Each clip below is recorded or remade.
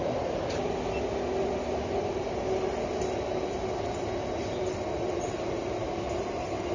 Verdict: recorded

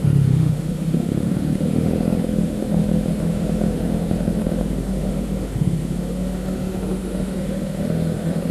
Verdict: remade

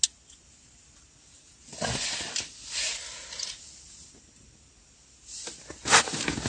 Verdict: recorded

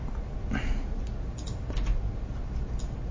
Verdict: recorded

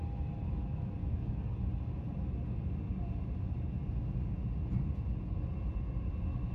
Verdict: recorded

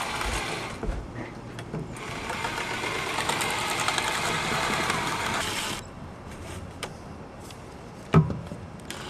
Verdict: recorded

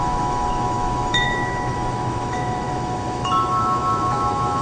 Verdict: remade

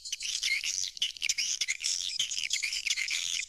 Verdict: remade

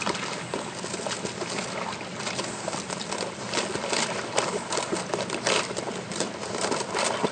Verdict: recorded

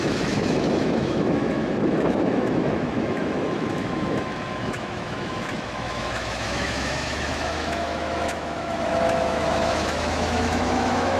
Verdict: remade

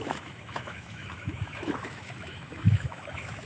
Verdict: remade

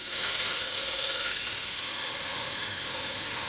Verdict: remade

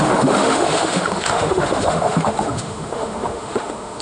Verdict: remade